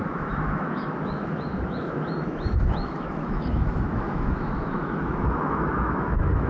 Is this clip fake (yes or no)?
yes